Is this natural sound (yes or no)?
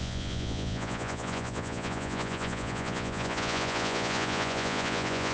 no